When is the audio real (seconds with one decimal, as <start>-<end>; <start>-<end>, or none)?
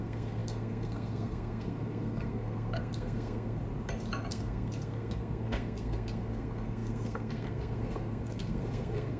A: 3.6-4.3